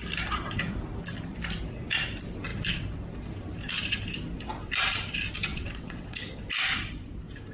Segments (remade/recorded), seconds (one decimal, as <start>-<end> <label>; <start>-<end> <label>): 0.0-5.5 recorded; 5.5-6.2 remade; 6.2-7.5 recorded